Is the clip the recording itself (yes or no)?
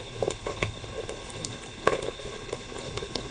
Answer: no